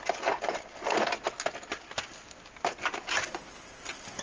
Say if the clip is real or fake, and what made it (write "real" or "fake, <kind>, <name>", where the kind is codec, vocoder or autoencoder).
real